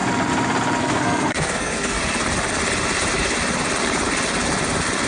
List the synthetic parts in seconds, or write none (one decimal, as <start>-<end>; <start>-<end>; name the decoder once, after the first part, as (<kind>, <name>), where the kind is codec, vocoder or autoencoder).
0.8-2.0 (codec, SNAC)

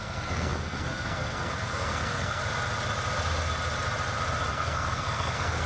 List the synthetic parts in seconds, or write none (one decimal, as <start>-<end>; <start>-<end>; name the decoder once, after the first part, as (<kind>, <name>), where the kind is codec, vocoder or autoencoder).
0.0-2.4 (codec, SNAC); 4.5-5.7

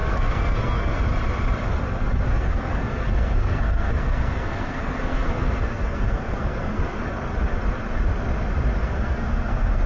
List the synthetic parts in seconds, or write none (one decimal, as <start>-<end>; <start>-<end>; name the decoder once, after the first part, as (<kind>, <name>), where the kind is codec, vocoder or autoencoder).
0.0-1.0 (codec, SNAC); 2.3-7.0; 8.8-9.9

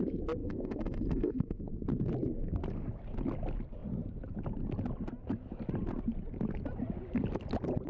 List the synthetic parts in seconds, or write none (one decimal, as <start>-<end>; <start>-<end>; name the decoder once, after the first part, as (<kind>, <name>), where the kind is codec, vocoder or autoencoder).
0.4-1.6 (codec, SNAC)